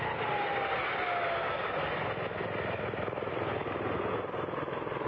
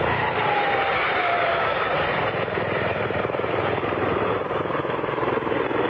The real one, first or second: first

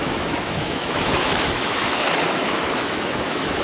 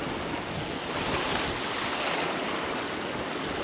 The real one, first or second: second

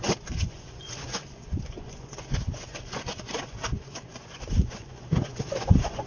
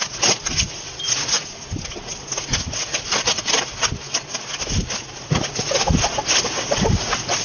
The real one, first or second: second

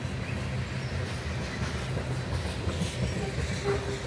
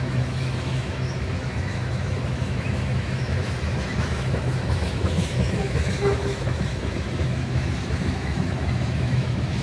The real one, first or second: first